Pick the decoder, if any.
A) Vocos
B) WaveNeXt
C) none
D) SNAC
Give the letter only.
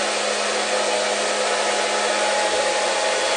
C